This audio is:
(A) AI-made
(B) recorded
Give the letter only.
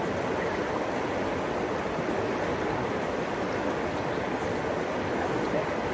B